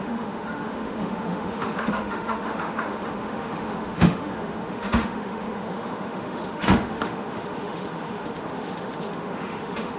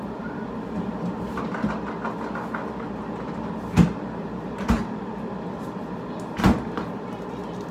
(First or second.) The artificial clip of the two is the first